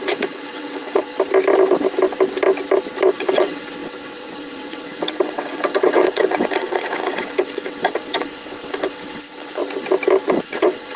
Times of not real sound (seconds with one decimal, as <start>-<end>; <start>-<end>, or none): 0.0-1.1; 3.1-9.6; 10.4-11.0